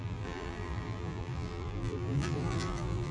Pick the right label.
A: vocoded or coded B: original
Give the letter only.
A